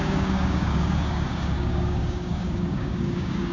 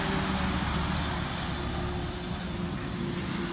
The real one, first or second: second